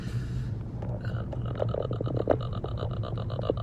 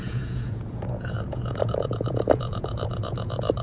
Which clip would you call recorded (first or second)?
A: first